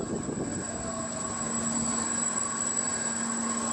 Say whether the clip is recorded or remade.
recorded